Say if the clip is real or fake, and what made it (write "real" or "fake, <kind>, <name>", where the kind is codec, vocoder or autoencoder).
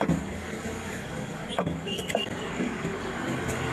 fake, codec, DAC